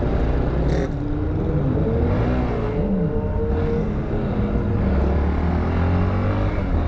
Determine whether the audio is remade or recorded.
recorded